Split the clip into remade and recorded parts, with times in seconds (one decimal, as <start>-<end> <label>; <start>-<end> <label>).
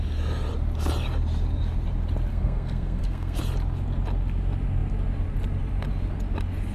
0.0-2.3 recorded; 2.3-3.4 remade; 3.4-6.7 recorded